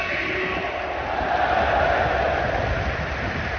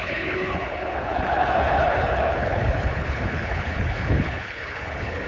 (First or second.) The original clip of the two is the first